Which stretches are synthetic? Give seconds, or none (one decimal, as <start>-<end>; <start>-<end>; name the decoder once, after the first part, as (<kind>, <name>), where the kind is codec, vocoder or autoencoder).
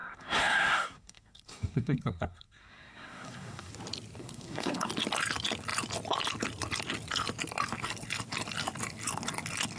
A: 0.0-3.7 (codec, SNAC); 4.2-4.9